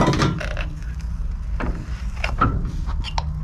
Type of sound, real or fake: real